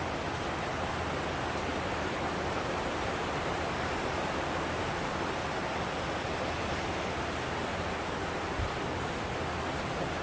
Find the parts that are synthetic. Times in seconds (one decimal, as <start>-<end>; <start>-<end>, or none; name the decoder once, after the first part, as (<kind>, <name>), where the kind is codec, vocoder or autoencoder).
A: 1.7-4.7 (vocoder, BigVGAN v2)